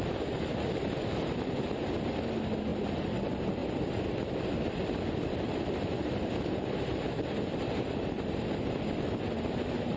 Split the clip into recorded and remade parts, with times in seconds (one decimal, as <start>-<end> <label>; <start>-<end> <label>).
0.0-2.7 recorded; 2.7-3.2 remade; 3.2-7.5 recorded; 7.5-9.3 remade; 9.3-10.0 recorded